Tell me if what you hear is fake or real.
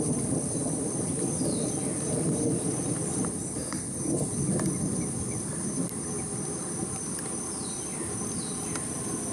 real